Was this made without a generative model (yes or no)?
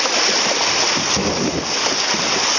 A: yes